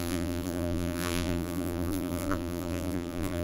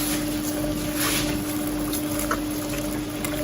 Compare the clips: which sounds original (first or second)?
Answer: second